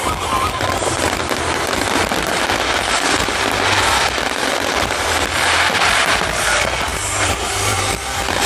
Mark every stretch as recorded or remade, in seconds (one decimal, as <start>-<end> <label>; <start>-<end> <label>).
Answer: 0.0-6.9 recorded; 6.9-7.9 remade; 7.9-8.5 recorded